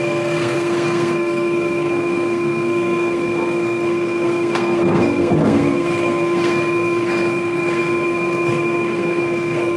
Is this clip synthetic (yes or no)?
yes